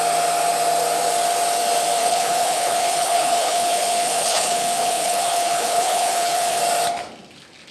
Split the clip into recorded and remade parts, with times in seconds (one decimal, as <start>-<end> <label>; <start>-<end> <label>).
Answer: 0.0-2.0 recorded; 2.0-6.6 remade; 6.6-7.7 recorded

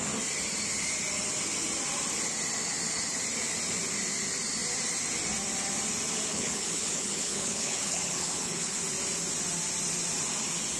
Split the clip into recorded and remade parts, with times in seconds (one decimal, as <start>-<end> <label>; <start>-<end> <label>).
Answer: 0.0-6.3 recorded; 6.3-8.8 remade; 8.8-10.8 recorded

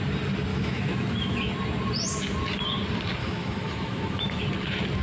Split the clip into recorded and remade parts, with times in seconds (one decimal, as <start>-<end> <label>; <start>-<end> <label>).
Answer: 0.0-0.5 recorded; 0.5-1.5 remade; 1.5-3.2 recorded; 3.2-4.4 remade; 4.4-5.0 recorded

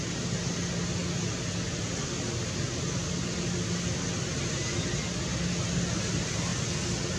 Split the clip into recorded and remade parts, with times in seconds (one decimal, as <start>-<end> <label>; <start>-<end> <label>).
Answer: 0.0-7.2 recorded

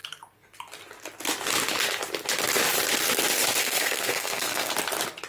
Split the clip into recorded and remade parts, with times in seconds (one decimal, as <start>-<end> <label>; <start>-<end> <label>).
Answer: 0.0-3.6 recorded; 3.6-4.7 remade; 4.7-5.3 recorded

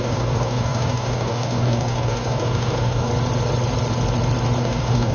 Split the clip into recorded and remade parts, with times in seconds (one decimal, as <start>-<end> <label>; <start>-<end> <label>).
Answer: 0.0-3.1 remade; 3.1-4.6 recorded; 4.6-5.1 remade

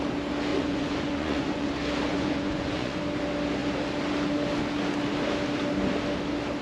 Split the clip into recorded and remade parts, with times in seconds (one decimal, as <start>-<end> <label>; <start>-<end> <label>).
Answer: 0.0-0.5 recorded; 0.5-1.7 remade; 1.7-2.1 recorded; 2.1-3.0 remade; 3.0-6.6 recorded